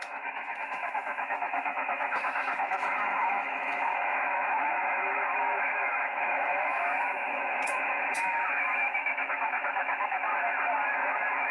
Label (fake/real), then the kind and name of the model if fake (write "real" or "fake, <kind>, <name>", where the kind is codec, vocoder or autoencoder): fake, autoencoder, DAC-VAE